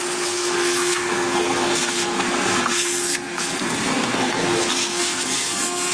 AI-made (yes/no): yes